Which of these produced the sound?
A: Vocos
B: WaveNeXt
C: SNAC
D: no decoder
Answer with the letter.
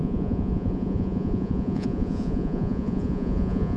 A